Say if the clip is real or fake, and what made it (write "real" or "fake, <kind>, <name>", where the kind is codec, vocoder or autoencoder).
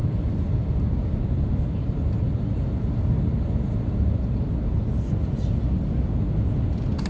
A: real